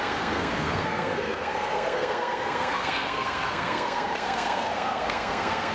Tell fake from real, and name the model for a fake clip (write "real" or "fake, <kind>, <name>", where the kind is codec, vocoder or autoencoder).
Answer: fake, codec, SNAC